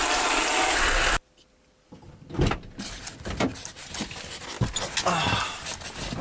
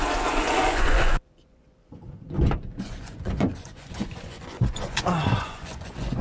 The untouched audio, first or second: first